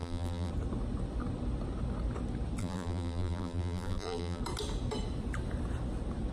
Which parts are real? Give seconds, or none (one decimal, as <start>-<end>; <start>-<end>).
0.5-2.6; 4.4-6.3